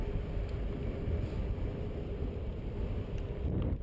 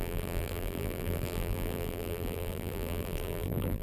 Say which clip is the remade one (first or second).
second